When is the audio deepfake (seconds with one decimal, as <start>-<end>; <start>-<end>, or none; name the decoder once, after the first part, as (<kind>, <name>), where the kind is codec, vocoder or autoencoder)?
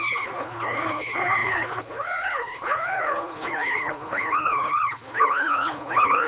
0.0-6.3 (codec, HILCodec)